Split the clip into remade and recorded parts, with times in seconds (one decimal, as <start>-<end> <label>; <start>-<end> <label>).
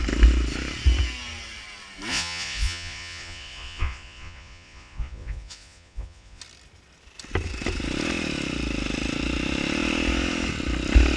0.0-2.1 recorded; 2.1-6.4 remade; 6.4-11.2 recorded